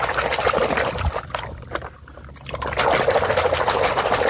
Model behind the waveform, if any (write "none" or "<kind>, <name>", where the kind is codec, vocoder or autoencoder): none